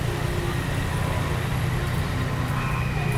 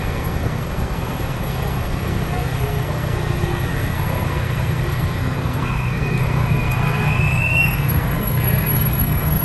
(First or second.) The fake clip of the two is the second